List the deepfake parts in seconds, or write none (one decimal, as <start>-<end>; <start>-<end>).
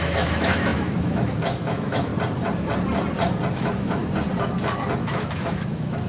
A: 0.0-2.1; 3.5-4.0; 5.0-6.1